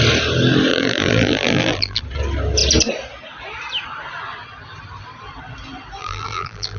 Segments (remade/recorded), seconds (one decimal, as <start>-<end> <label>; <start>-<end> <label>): 0.0-0.7 recorded; 0.7-2.0 remade; 2.0-6.0 recorded; 6.0-6.8 remade